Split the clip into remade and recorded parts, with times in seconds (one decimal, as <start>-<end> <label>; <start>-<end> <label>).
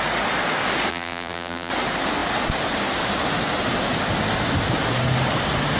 0.0-0.9 recorded; 0.9-1.7 remade; 1.7-5.8 recorded